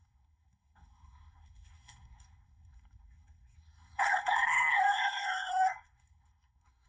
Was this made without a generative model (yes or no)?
no